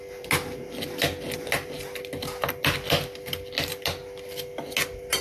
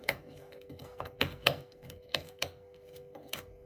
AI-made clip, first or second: second